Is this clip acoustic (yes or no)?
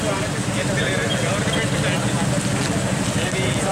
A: yes